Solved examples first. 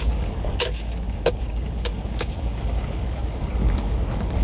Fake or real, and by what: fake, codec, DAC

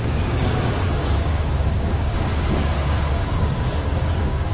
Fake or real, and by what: fake, codec, DAC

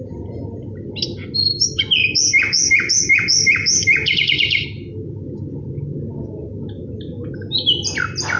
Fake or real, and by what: real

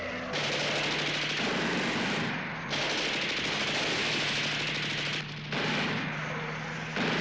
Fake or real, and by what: real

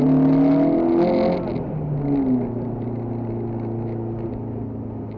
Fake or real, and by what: real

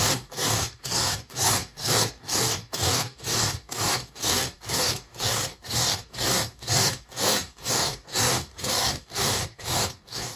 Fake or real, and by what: fake, codec, DAC